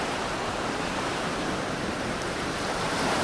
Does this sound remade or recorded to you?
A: remade